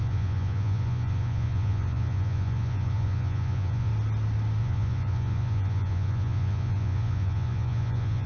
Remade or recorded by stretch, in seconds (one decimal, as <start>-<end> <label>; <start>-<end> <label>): 0.0-3.9 remade; 3.9-4.6 recorded; 4.6-8.3 remade